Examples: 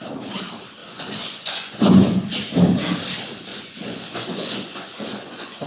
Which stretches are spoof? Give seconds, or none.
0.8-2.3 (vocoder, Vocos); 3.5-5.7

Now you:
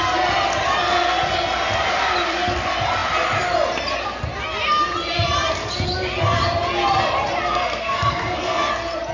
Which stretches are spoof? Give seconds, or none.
7.4-8.7 (codec, SNAC)

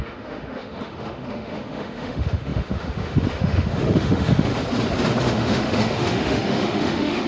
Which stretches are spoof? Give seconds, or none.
0.0-4.5 (autoencoder, DAC-VAE); 5.2-7.3

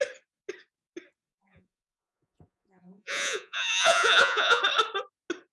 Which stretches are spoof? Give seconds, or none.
1.3-4.6 (vocoder, Vocos)

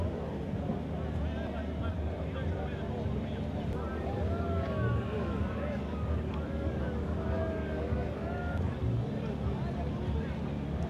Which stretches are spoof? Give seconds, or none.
3.9-8.8 (codec, DAC)

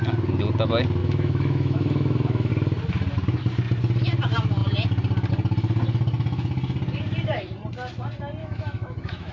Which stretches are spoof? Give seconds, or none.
1.0-2.5 (autoencoder, DAC-VAE); 8.4-9.3